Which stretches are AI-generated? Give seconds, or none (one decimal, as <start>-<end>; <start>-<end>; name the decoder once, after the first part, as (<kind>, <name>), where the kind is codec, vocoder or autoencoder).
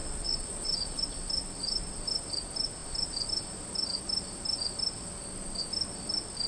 0.0-1.0 (vocoder, Vocos)